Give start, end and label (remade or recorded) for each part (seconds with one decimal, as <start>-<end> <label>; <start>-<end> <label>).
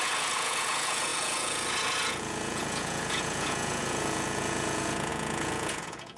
0.0-6.2 remade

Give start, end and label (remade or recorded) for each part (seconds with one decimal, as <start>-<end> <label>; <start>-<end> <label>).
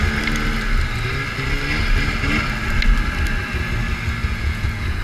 0.0-4.2 recorded; 4.2-5.0 remade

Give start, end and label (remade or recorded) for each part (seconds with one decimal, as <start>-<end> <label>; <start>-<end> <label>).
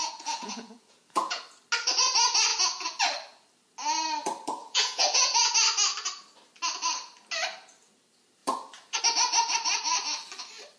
0.0-1.4 remade; 1.4-2.5 recorded; 2.5-3.0 remade; 3.0-4.6 recorded; 4.6-5.5 remade; 5.5-10.8 recorded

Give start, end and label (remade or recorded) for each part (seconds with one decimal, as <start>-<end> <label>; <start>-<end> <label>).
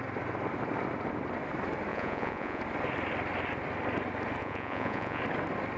0.0-1.9 recorded; 1.9-2.6 remade; 2.6-4.4 recorded; 4.4-5.2 remade; 5.2-5.8 recorded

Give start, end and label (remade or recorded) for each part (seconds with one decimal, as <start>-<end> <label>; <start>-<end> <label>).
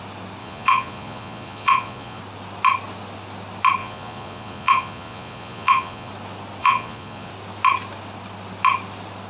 0.0-0.4 recorded; 0.4-2.2 remade; 2.2-3.8 recorded; 3.8-6.1 remade; 6.1-6.6 recorded; 6.6-7.3 remade; 7.3-9.3 recorded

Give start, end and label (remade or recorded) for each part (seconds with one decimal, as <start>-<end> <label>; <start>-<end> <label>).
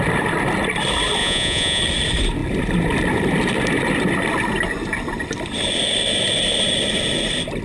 0.0-1.2 recorded; 1.2-1.8 remade; 1.8-7.6 recorded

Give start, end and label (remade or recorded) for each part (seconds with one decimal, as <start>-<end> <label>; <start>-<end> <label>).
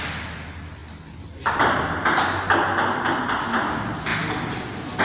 0.0-5.0 recorded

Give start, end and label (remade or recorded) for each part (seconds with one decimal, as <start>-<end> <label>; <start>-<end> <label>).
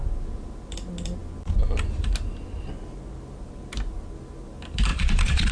0.0-4.9 recorded; 4.9-5.5 remade